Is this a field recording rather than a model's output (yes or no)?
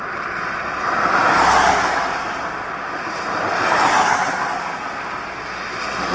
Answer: yes